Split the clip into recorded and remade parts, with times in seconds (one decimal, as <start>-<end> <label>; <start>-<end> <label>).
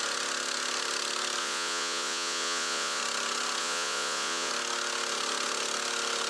0.0-1.4 recorded; 1.4-3.0 remade; 3.0-3.6 recorded; 3.6-4.5 remade; 4.5-6.3 recorded